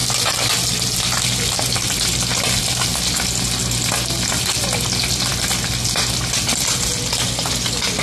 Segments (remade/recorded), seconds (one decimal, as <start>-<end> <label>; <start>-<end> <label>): 0.0-8.0 recorded